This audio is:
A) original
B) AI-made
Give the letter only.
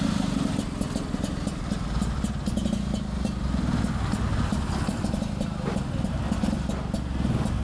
A